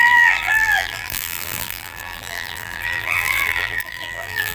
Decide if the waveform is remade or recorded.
remade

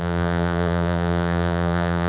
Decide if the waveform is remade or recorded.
remade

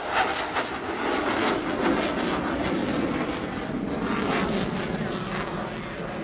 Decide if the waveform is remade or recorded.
recorded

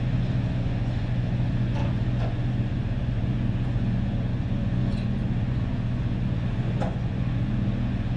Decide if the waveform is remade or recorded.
remade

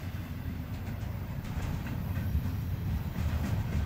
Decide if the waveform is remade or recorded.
remade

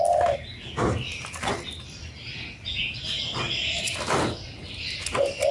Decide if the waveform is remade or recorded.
recorded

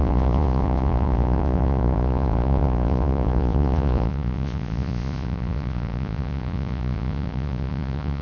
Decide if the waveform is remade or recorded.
remade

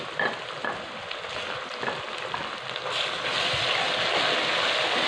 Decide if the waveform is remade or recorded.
recorded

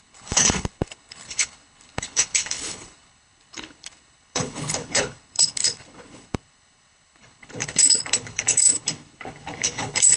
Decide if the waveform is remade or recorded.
remade